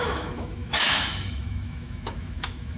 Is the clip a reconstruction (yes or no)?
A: yes